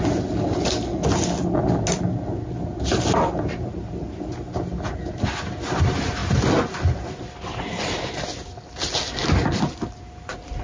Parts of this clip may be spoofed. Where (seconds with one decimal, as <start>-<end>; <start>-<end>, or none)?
none